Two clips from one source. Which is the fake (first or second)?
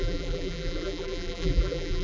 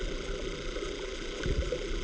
first